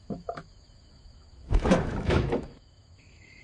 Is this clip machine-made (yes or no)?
yes